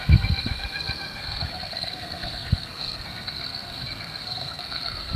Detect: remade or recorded remade